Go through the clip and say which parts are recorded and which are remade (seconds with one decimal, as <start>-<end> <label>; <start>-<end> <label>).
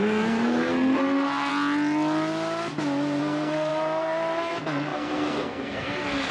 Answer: 0.0-1.5 remade; 1.5-3.2 recorded; 3.2-6.3 remade